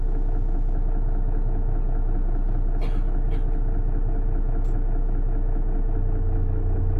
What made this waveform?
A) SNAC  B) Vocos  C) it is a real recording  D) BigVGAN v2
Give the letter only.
C